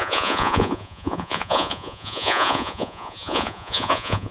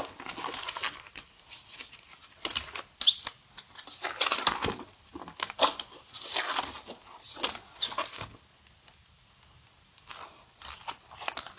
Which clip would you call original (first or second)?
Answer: second